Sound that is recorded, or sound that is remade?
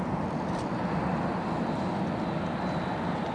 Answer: recorded